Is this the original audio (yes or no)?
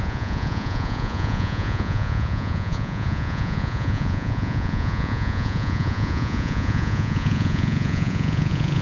no